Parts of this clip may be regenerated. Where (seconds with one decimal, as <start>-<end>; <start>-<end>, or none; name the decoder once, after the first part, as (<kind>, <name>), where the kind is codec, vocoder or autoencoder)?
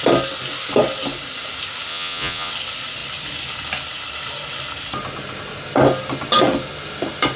1.9-2.5 (vocoder, Vocos)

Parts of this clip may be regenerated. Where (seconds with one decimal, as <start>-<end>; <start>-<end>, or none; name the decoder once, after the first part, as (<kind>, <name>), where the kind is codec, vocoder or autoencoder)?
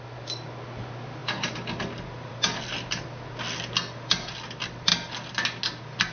none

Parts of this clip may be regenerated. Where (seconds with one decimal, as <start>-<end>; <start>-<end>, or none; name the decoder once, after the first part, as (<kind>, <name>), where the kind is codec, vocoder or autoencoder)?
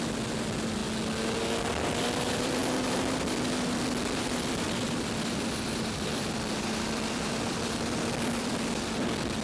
0.0-0.8 (vocoder, BigVGAN v2); 1.6-9.4